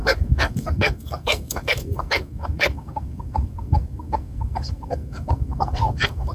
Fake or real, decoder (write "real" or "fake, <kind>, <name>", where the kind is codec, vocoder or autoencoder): fake, codec, SNAC